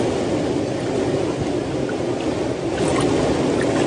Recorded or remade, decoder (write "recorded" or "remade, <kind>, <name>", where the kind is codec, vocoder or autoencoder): recorded